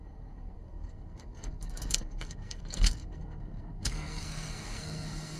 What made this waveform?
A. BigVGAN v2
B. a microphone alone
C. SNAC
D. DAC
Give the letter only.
C